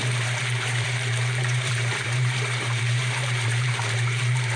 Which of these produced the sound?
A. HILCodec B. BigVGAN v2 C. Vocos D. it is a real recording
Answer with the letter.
B